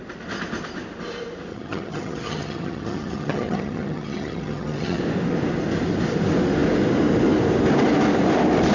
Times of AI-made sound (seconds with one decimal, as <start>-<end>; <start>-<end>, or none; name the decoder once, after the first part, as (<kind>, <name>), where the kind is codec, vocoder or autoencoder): 1.5-5.0 (vocoder, HiFi-GAN)